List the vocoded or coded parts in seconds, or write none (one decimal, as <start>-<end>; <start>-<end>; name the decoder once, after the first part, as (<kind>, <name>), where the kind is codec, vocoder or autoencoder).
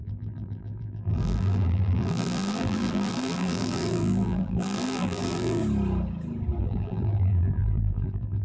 0.0-5.6 (vocoder, BigVGAN v2); 6.6-8.4